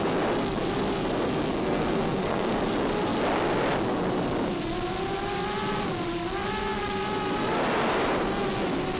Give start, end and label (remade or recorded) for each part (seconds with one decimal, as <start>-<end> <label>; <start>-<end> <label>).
0.0-1.5 recorded; 1.5-2.5 remade; 2.5-9.0 recorded